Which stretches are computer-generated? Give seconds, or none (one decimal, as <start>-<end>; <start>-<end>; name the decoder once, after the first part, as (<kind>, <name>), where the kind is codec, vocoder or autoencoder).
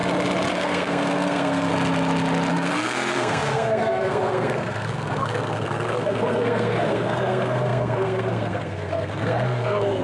0.5-1.7 (codec, SNAC); 2.5-10.0